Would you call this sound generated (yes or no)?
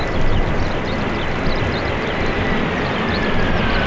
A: no